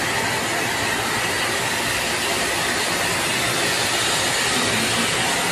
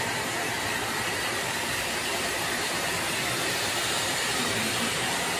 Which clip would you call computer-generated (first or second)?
second